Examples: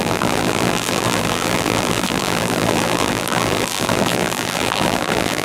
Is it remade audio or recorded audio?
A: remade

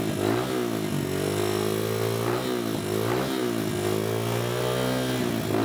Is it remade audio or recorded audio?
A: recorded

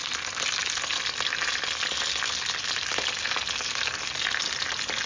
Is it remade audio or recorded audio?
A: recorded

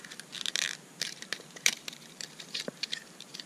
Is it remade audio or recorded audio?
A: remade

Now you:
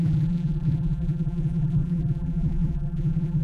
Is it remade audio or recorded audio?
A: remade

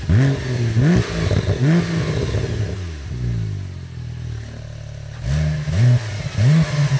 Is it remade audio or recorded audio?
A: recorded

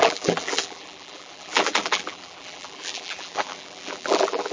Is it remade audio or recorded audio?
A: remade